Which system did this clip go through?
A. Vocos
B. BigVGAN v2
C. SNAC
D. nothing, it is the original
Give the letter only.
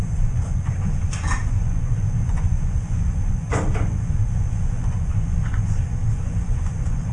A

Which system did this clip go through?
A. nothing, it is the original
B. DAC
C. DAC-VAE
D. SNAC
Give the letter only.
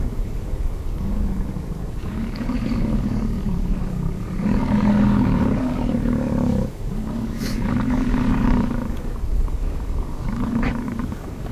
B